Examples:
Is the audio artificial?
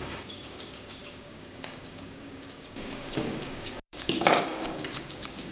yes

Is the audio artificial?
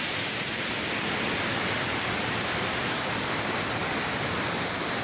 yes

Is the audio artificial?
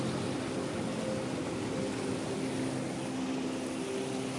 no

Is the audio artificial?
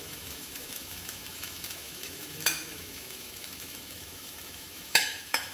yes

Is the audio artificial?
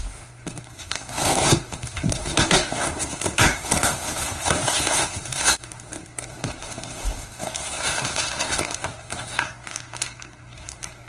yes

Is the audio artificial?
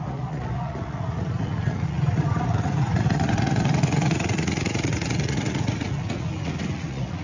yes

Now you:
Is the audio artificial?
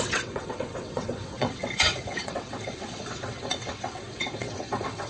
yes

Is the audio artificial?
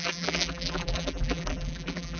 yes